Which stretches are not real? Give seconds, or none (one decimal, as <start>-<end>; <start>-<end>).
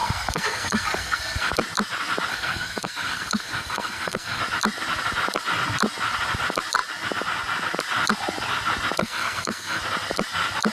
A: 0.0-1.5; 2.3-4.4; 9.0-9.8